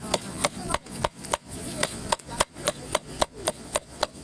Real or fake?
fake